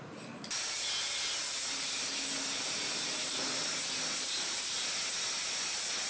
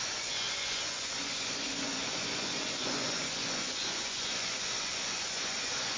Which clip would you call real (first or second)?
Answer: first